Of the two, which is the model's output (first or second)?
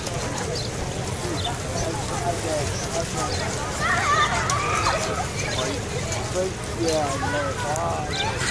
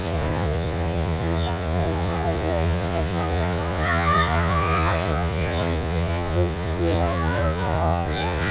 second